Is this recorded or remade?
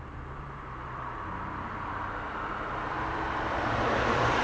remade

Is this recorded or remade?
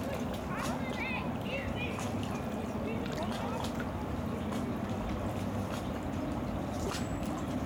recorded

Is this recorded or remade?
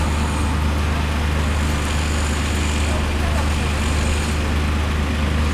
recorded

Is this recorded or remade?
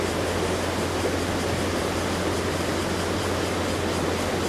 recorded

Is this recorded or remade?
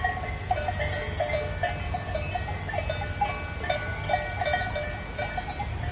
recorded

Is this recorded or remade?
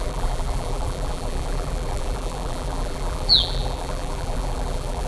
remade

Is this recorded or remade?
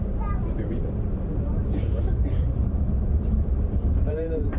remade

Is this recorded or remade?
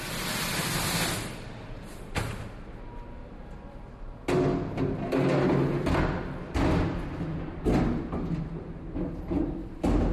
recorded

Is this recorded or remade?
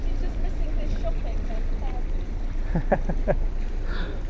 remade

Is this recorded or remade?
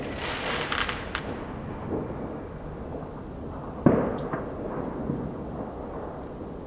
recorded